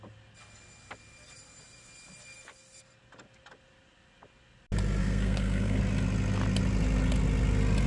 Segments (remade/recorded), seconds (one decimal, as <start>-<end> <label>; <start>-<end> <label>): 0.0-5.0 recorded; 5.0-5.8 remade; 5.8-7.9 recorded